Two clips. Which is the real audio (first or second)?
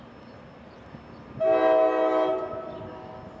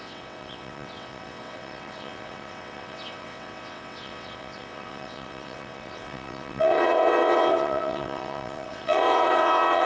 first